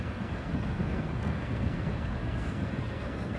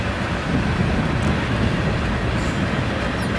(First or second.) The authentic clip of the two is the second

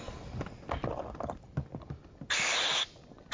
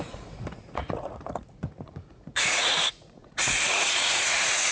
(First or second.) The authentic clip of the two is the first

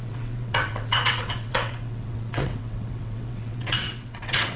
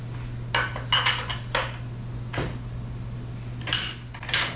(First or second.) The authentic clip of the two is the second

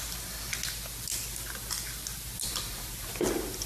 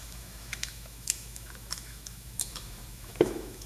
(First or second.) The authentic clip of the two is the first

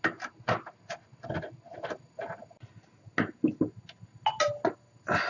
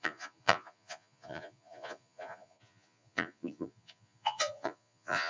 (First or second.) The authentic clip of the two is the first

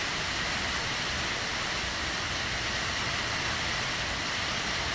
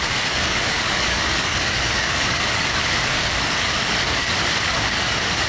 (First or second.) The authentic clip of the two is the first